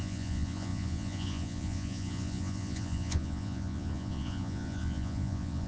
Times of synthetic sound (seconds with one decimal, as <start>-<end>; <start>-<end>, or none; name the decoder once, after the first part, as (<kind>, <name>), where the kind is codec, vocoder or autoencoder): 0.0-5.7 (vocoder, Vocos)